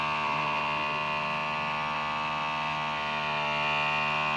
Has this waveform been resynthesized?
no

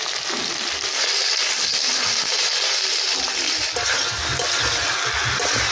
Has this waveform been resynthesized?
no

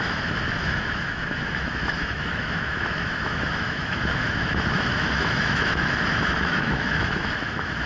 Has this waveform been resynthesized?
yes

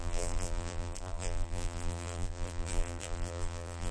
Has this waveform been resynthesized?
yes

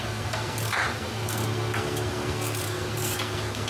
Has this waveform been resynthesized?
yes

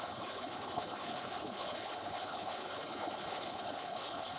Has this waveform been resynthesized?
yes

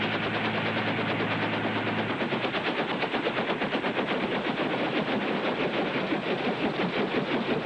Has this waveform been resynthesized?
no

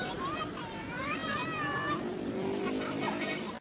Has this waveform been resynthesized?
no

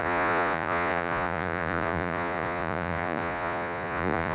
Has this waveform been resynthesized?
yes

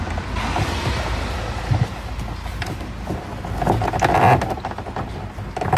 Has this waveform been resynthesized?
no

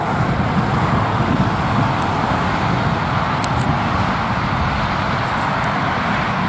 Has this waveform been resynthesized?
no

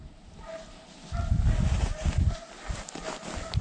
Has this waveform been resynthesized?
no